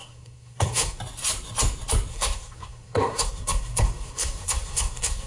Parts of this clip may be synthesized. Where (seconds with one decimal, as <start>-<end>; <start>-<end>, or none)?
0.0-1.0; 2.1-5.3